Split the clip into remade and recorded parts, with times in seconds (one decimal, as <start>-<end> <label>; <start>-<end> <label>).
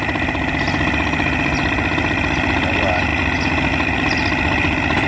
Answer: 0.0-5.1 recorded